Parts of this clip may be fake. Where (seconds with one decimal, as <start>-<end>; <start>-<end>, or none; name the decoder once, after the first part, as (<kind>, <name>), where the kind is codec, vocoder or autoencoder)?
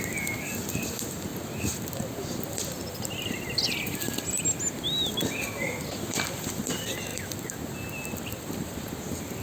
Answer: 7.1-7.6 (vocoder, BigVGAN v2)